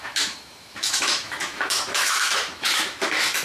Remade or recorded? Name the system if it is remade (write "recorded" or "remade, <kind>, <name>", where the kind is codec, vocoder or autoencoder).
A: remade, autoencoder, DAC-VAE